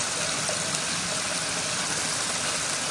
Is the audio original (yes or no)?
yes